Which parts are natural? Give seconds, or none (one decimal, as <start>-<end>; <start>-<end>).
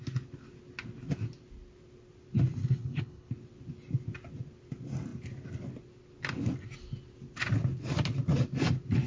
0.0-2.6; 3.3-9.1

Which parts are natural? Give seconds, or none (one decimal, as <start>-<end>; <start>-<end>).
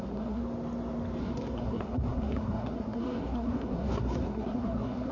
0.4-1.2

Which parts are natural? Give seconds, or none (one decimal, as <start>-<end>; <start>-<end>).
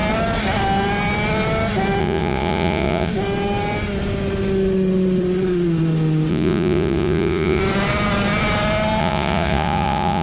0.0-2.0; 3.1-6.3; 7.6-9.0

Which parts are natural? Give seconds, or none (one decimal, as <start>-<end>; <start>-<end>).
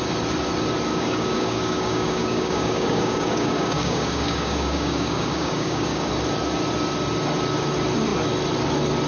0.0-0.9; 6.1-9.1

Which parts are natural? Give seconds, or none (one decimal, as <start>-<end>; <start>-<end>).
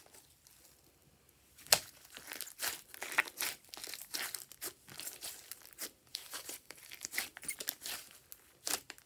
0.0-6.1; 7.3-9.1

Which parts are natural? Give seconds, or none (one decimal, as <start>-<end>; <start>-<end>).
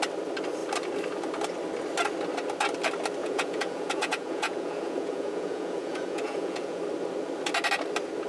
0.0-3.2; 6.8-8.3